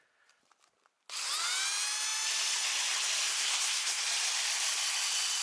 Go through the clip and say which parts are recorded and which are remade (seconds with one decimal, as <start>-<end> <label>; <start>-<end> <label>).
0.0-3.3 recorded; 3.3-4.0 remade; 4.0-5.4 recorded

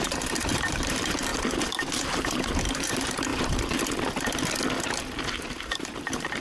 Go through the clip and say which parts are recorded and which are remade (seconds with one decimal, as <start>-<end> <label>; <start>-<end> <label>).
0.0-1.3 remade; 1.3-2.0 recorded; 2.0-3.3 remade; 3.3-5.3 recorded; 5.3-6.4 remade